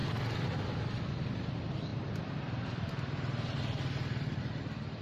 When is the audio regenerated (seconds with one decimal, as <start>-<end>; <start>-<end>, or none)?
none